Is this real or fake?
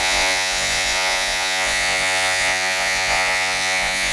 fake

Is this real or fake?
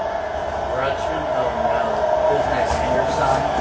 real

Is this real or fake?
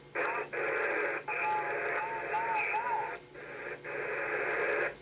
real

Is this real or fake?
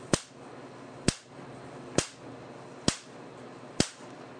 real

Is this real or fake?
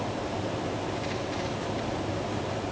real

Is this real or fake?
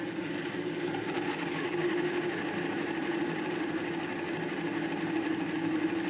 real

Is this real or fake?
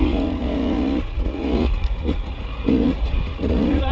fake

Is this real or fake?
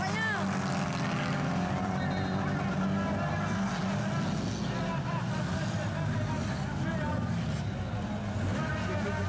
real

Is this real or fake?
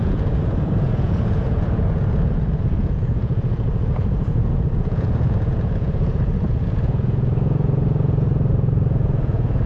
fake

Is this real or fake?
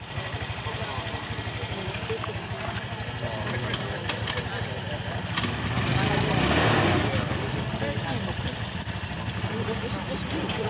real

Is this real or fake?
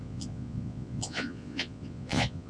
fake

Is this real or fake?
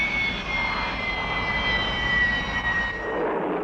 real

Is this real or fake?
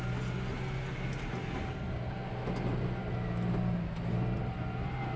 real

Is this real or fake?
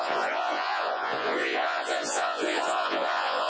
fake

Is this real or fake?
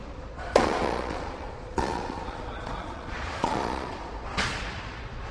fake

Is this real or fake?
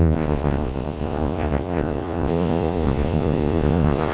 fake